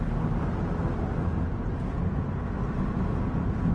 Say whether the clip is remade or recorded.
recorded